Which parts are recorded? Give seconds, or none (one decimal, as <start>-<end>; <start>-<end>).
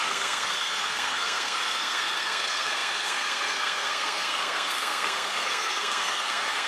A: none